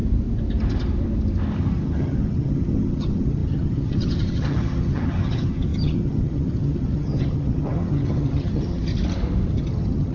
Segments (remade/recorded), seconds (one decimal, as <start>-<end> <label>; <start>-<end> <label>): 0.0-1.5 recorded; 1.5-8.9 remade; 8.9-9.5 recorded; 9.5-10.1 remade